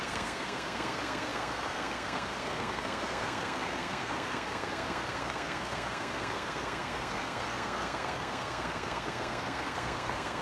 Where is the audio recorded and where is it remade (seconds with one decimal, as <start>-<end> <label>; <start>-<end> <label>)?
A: 0.0-10.4 remade